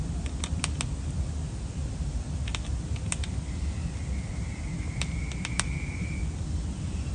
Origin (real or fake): real